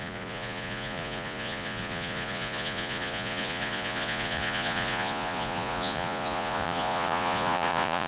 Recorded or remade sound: remade